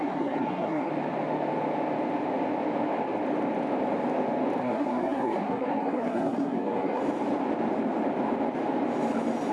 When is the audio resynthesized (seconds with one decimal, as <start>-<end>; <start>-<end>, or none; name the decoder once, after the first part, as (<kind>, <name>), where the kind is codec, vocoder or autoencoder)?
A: 0.0-0.9 (codec, SNAC); 4.6-7.0